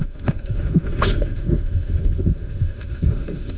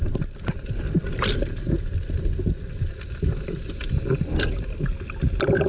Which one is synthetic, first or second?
first